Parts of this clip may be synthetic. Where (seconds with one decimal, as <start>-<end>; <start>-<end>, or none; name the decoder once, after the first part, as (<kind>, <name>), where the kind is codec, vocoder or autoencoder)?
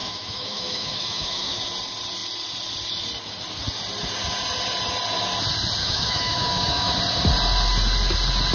0.0-1.6 (autoencoder, DAC-VAE); 5.8-6.9